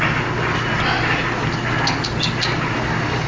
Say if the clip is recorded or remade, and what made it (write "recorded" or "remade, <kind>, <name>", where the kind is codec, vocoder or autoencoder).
recorded